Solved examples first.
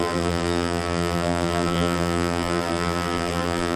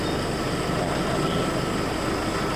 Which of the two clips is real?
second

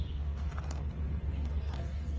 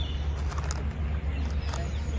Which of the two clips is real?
second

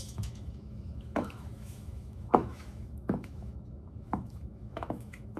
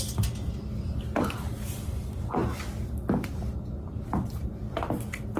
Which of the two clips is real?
second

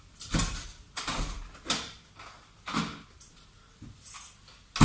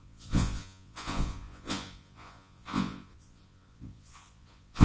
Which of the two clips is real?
first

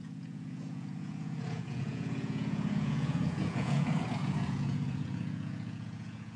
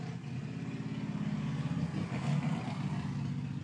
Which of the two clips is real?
second